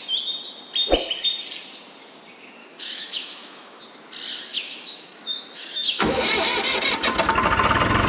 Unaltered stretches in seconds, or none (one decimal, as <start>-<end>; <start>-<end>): 0.0-2.6; 3.8-4.5; 6.2-8.1